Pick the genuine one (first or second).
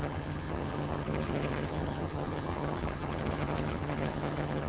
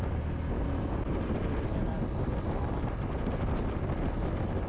second